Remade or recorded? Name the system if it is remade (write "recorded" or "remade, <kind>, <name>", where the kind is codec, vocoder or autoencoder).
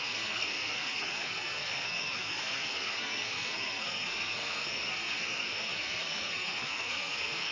remade, codec, SNAC